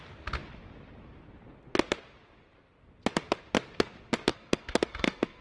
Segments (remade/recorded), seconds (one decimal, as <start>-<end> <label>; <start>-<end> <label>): 0.0-4.3 recorded; 4.3-5.4 remade